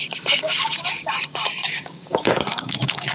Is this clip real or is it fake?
fake